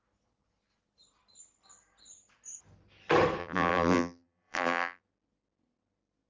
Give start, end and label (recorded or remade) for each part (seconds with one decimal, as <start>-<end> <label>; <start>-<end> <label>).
0.0-3.4 recorded; 3.4-5.0 remade; 5.0-6.3 recorded

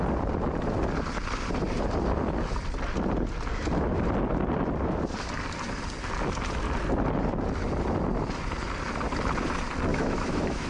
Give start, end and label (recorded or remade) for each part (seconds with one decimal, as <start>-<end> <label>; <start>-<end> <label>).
0.0-9.9 recorded; 9.9-10.7 remade

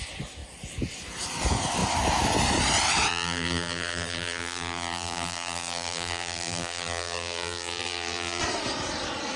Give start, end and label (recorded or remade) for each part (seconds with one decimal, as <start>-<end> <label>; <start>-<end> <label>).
0.0-3.1 recorded; 3.1-8.4 remade; 8.4-9.4 recorded

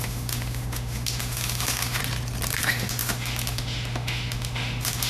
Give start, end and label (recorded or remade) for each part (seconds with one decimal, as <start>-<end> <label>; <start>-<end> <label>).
0.0-2.0 remade; 2.0-2.6 recorded; 2.6-5.1 remade

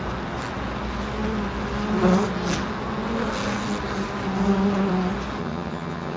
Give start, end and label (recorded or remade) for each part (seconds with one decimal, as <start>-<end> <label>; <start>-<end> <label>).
0.0-5.4 recorded; 5.4-6.2 remade

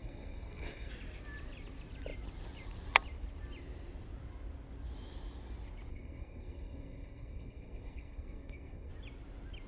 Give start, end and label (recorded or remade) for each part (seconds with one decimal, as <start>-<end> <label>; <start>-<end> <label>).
0.0-0.9 remade; 0.9-5.9 recorded; 5.9-8.9 remade; 8.9-9.7 recorded

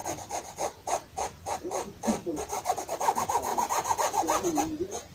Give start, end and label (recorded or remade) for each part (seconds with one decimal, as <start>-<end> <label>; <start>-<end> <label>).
0.0-1.7 remade; 1.7-3.5 recorded; 3.5-5.1 remade